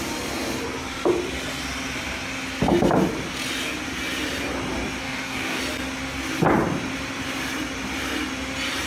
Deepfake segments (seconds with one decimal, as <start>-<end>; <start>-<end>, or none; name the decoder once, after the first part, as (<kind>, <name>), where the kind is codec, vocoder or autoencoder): 5.0-5.6 (codec, DAC)